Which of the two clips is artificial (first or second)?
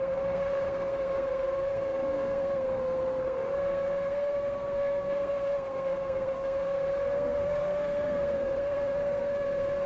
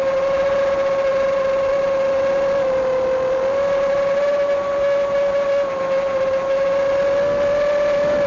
first